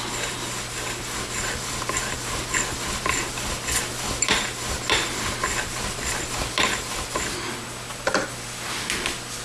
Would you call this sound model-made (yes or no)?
no